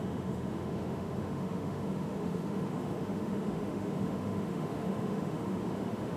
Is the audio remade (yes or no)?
yes